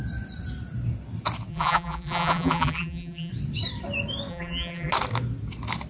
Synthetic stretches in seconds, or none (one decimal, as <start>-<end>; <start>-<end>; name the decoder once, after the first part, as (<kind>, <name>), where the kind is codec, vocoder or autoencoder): 1.5-3.3 (vocoder, BigVGAN v2); 4.3-4.9